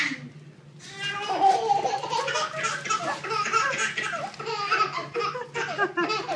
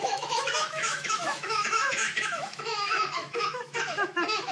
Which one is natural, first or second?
first